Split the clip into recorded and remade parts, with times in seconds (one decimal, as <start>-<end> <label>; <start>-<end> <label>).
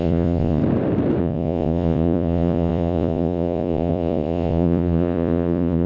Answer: 0.0-0.6 remade; 0.6-1.2 recorded; 1.2-5.9 remade